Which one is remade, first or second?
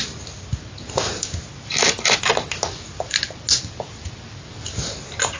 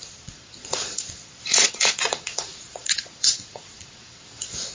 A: second